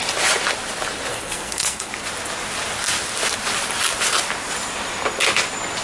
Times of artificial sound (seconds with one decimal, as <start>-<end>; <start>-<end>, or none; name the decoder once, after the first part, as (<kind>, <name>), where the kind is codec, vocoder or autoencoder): 1.1-1.9 (codec, SNAC)